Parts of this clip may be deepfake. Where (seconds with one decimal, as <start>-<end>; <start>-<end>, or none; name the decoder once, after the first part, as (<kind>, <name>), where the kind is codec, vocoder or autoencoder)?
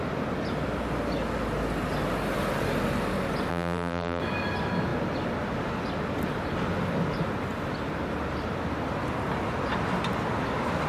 3.5-4.2 (vocoder, BigVGAN v2)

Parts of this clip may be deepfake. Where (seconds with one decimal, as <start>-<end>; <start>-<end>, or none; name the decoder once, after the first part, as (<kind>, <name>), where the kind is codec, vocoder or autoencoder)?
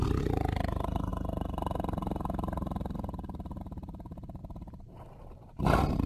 0.0-1.1 (vocoder, BigVGAN v2); 3.6-4.4; 5.5-6.1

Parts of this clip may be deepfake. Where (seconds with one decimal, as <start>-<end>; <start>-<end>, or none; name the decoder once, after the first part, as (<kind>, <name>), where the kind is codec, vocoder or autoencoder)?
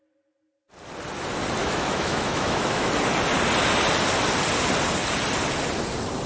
1.6-2.9 (autoencoder, DAC-VAE)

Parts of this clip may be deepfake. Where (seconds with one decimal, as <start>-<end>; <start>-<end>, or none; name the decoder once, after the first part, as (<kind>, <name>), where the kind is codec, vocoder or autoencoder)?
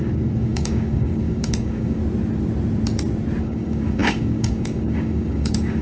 0.0-2.0 (codec, DAC); 3.4-5.8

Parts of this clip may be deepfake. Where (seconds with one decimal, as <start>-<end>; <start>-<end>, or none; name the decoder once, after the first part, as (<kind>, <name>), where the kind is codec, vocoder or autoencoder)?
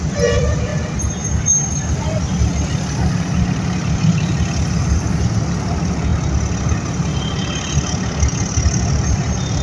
0.0-0.7 (vocoder, BigVGAN v2); 5.1-6.1; 6.6-8.3; 8.9-9.6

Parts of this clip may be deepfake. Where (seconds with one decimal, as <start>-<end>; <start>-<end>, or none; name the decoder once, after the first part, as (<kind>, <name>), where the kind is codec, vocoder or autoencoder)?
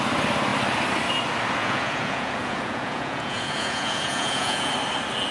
1.6-4.7 (vocoder, Vocos)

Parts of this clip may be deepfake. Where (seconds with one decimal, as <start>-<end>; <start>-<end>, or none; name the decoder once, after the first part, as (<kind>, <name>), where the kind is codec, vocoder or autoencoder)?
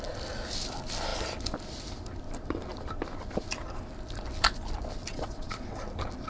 5.1-5.8 (vocoder, WaveNeXt)